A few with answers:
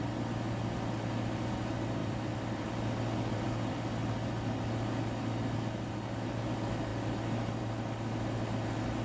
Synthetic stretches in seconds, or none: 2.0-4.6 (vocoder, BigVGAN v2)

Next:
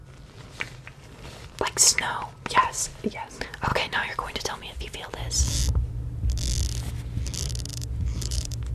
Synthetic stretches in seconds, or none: 7.7-8.7 (vocoder, BigVGAN v2)